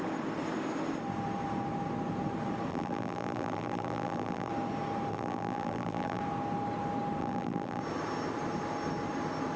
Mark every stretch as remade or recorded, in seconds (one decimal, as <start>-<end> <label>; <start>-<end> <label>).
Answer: 0.0-2.7 recorded; 2.7-4.5 remade; 4.5-5.1 recorded; 5.1-6.2 remade; 6.2-7.2 recorded; 7.2-7.8 remade; 7.8-9.6 recorded